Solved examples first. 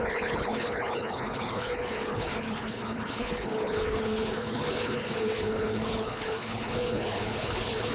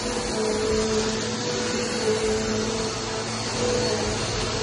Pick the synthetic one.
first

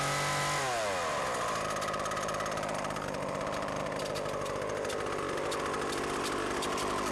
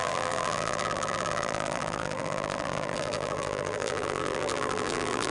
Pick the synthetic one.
second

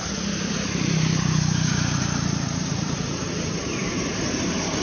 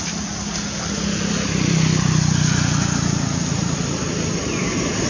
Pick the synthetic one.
first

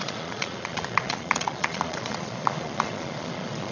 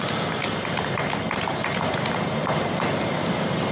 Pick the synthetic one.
first